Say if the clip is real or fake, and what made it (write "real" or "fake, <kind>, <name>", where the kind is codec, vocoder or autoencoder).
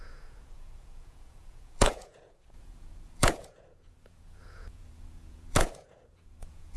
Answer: fake, vocoder, Vocos